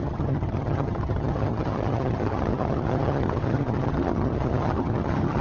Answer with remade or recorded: remade